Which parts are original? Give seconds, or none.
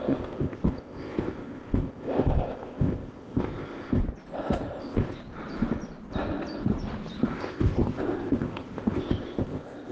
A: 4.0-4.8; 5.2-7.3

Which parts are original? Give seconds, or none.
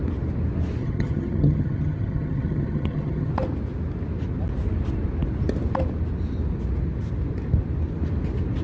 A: 0.0-0.8; 3.3-8.6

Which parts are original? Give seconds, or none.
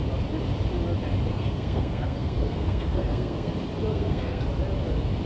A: 0.0-1.3; 3.5-3.9; 4.4-5.3